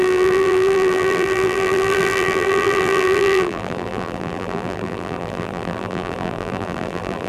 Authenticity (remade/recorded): remade